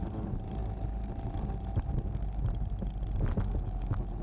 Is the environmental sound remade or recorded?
recorded